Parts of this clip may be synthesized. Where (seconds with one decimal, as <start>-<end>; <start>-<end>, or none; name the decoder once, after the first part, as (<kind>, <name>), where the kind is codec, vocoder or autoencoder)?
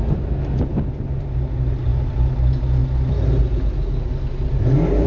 none